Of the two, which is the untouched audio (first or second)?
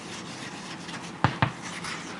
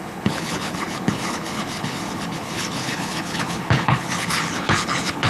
first